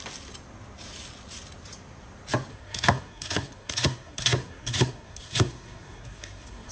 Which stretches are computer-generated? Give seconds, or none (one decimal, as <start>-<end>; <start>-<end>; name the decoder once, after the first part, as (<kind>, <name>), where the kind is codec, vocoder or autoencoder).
2.5-6.7 (codec, SNAC)